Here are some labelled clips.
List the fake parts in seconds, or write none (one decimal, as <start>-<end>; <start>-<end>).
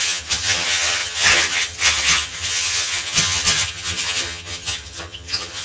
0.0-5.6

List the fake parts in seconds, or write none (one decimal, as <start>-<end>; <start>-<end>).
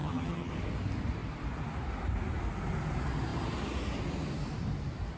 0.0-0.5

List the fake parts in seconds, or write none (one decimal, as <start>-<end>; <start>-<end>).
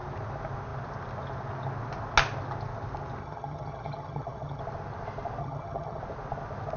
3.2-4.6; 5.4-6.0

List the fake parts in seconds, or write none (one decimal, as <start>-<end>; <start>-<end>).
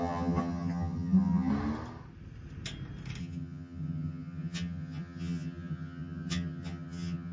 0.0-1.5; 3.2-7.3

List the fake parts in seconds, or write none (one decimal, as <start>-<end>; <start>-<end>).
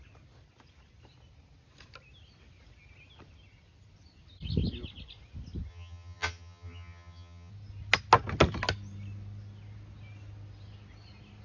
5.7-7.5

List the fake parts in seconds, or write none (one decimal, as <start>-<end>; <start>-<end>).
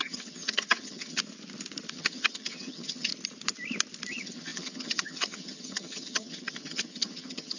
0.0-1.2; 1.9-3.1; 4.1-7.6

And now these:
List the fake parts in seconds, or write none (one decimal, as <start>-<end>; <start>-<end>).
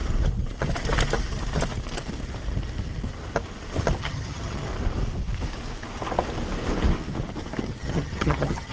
4.0-4.7; 7.6-8.7